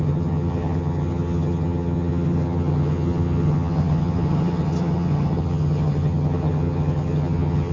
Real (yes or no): no